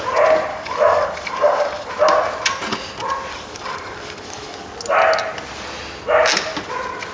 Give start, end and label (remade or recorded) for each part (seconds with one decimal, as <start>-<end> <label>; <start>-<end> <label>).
0.0-0.5 recorded; 0.5-1.9 remade; 1.9-3.3 recorded; 3.3-4.7 remade; 4.7-7.1 recorded

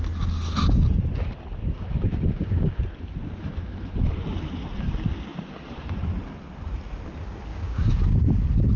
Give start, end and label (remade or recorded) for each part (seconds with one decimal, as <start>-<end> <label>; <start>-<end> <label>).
0.0-1.6 recorded; 1.6-2.8 remade; 2.8-7.5 recorded; 7.5-8.1 remade; 8.1-8.8 recorded

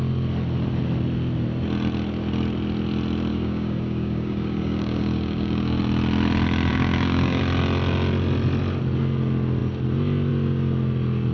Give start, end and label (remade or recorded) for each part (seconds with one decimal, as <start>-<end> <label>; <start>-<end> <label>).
0.0-3.3 recorded; 3.3-5.8 remade; 5.8-6.7 recorded; 6.7-7.4 remade; 7.4-11.3 recorded

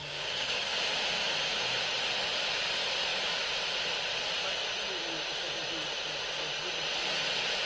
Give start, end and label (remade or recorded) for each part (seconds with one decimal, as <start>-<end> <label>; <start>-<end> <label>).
0.0-0.7 remade; 0.7-7.7 recorded

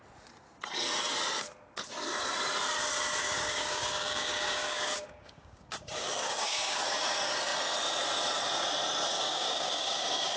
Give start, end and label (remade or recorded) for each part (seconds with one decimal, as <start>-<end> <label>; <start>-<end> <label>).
0.0-3.2 recorded; 3.2-6.8 remade; 6.8-9.1 recorded; 9.1-10.4 remade